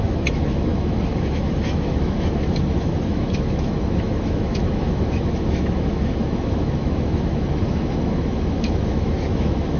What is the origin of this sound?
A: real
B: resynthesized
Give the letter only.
B